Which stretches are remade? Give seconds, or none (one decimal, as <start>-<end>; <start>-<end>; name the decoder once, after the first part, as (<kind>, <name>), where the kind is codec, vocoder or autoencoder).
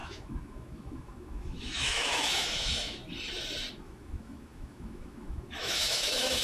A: 0.0-3.0 (autoencoder, DAC-VAE); 3.7-6.4